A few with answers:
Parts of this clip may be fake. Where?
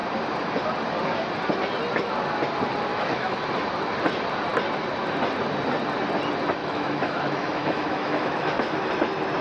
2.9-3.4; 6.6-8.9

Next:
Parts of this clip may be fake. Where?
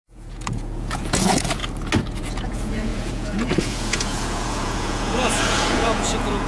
0.0-1.6; 2.2-6.5